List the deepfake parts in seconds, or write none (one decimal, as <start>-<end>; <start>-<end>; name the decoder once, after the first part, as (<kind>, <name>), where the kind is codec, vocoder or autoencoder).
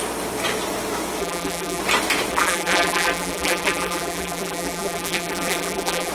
1.2-1.8 (vocoder, BigVGAN v2); 2.3-6.1